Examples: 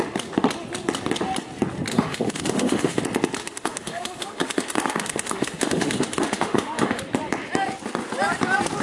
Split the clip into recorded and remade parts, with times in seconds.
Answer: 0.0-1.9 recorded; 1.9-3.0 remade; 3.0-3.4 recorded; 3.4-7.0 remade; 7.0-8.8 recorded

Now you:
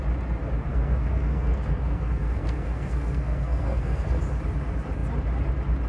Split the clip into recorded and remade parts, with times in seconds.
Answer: 0.0-0.7 recorded; 0.7-4.2 remade; 4.2-5.9 recorded

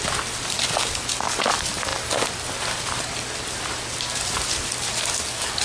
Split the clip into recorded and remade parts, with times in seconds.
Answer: 0.0-5.6 recorded

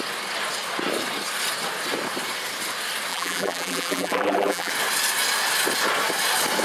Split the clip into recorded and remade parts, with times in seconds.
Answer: 0.0-3.1 recorded; 3.1-4.7 remade; 4.7-6.6 recorded

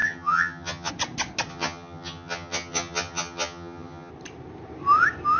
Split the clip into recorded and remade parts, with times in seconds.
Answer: 0.0-0.9 remade; 0.9-1.5 recorded; 1.5-4.1 remade; 4.1-5.4 recorded